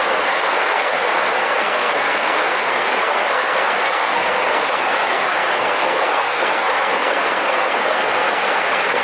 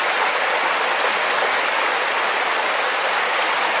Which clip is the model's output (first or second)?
first